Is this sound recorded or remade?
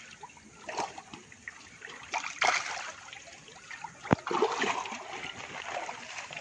recorded